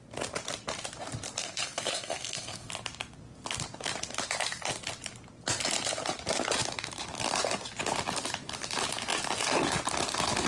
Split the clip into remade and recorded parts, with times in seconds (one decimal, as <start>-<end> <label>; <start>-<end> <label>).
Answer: 0.0-1.4 recorded; 1.4-2.7 remade; 2.7-10.5 recorded